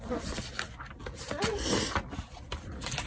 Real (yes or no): yes